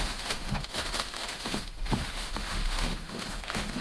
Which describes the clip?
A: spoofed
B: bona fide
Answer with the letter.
A